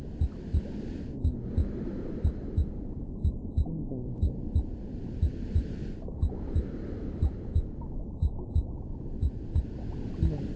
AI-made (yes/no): no